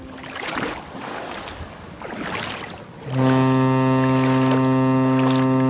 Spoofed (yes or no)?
no